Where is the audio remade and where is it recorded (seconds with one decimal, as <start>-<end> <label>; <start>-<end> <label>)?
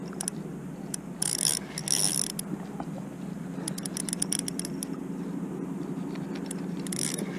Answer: 0.0-7.4 recorded